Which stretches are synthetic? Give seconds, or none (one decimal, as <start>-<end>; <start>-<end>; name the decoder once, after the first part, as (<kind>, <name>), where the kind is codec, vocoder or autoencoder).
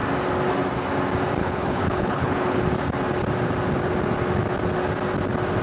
1.4-2.6 (codec, HILCodec)